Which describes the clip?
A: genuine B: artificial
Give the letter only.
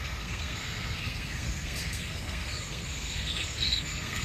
B